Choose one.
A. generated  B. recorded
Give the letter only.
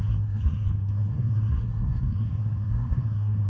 A